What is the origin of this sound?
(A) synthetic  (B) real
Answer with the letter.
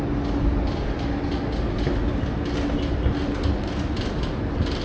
B